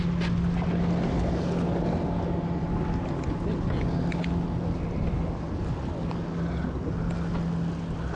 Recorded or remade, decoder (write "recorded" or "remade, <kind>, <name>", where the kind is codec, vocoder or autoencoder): recorded